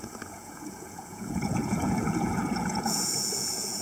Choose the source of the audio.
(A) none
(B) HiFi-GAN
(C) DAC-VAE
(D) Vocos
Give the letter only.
D